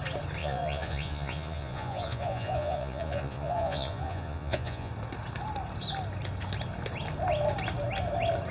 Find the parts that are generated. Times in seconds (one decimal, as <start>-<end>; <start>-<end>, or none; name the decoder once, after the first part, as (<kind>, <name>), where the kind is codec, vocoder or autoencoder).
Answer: 0.4-4.9 (vocoder, Vocos)